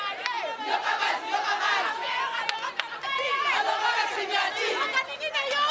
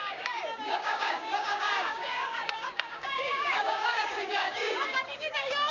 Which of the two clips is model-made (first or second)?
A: second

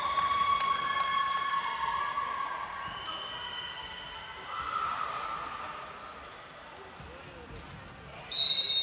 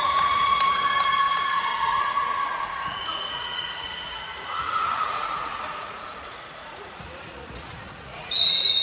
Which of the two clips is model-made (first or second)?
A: second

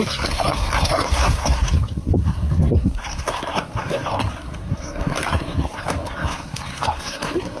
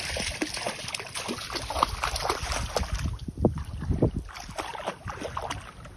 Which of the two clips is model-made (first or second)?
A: first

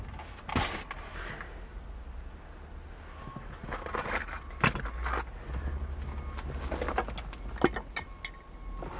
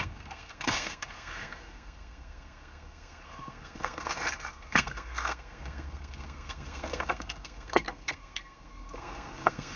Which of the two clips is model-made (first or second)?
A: second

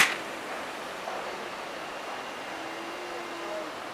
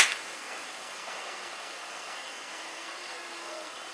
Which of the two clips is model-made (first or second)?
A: second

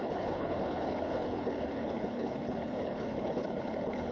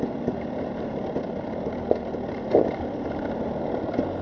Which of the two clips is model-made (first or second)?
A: first